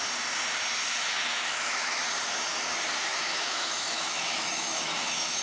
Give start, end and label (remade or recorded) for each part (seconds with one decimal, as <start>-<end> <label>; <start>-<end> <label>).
0.0-1.0 recorded; 1.0-2.0 remade; 2.0-3.1 recorded; 3.1-5.4 remade